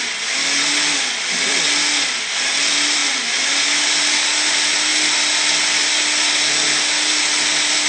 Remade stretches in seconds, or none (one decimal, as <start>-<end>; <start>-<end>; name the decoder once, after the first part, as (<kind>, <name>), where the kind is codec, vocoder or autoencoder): none